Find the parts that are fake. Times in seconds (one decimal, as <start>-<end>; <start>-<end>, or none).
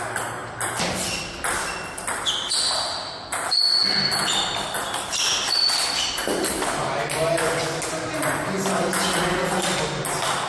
3.8-4.8